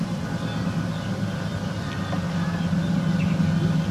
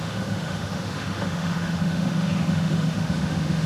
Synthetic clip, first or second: second